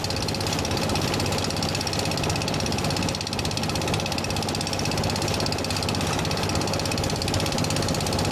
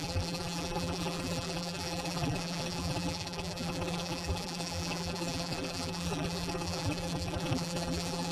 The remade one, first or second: second